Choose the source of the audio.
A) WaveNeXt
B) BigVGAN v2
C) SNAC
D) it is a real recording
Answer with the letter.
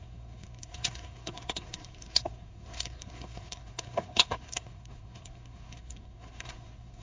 C